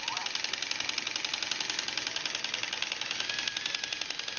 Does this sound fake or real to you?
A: real